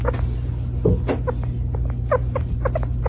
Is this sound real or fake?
real